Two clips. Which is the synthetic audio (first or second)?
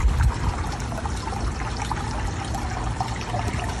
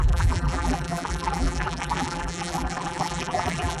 second